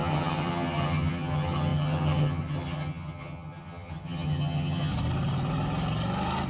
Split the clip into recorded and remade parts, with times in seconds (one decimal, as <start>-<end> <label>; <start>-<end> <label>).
0.0-4.9 remade; 4.9-6.5 recorded